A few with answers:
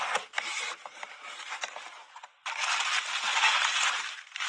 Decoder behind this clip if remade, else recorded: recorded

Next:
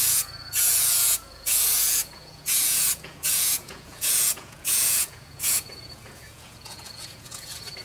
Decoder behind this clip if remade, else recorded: remade, vocoder, Vocos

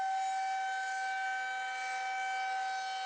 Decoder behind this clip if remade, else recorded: recorded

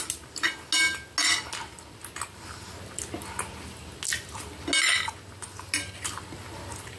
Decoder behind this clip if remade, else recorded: recorded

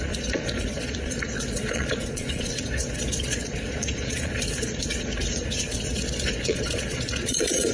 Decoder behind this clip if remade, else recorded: remade, vocoder, Vocos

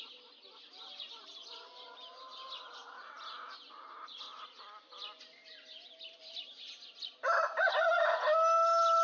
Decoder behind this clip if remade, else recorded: recorded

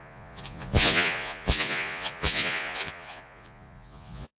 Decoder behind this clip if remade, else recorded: remade, vocoder, Vocos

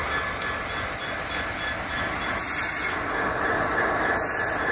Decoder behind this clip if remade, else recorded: recorded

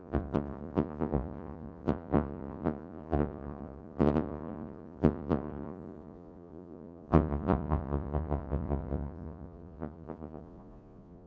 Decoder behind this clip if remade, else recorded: remade, vocoder, Vocos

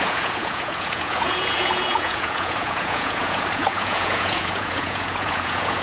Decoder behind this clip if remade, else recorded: remade, vocoder, Vocos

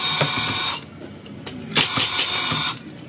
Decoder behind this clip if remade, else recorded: recorded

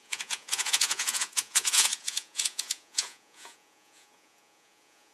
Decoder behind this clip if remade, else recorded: remade, vocoder, Vocos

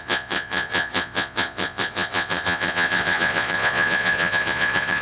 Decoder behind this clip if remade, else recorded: remade, vocoder, Vocos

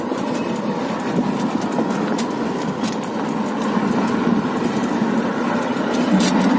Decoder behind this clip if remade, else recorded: recorded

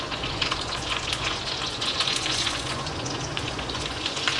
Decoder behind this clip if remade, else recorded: remade, vocoder, Vocos